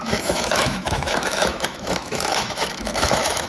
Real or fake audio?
fake